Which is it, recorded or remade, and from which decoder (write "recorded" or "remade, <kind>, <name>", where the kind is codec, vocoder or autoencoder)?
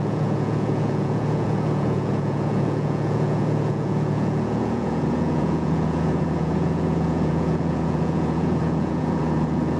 remade, vocoder, Vocos